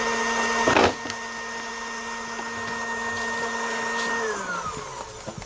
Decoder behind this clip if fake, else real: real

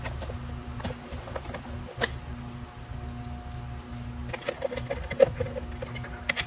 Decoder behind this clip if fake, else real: real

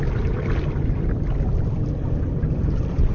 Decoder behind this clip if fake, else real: fake, vocoder, BigVGAN v2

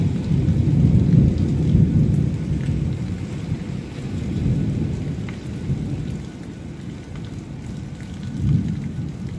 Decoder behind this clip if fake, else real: real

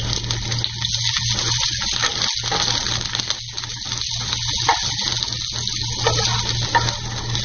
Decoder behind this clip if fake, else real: real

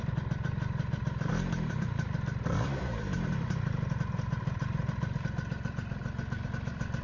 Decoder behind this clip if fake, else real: fake, vocoder, BigVGAN v2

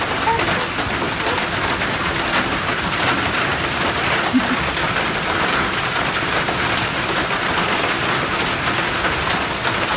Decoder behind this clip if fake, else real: fake, vocoder, BigVGAN v2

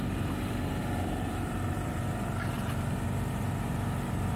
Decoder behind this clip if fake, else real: fake, vocoder, BigVGAN v2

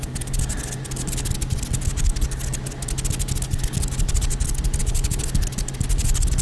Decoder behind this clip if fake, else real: real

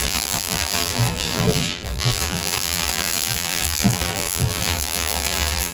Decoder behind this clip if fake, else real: fake, vocoder, BigVGAN v2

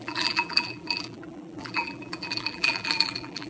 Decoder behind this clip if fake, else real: fake, vocoder, BigVGAN v2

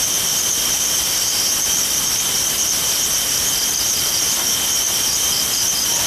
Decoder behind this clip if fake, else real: fake, vocoder, BigVGAN v2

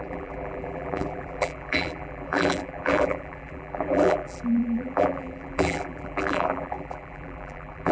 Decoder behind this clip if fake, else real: fake, vocoder, BigVGAN v2